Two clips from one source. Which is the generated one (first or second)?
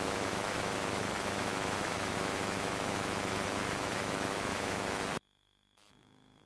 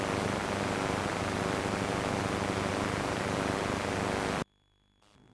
first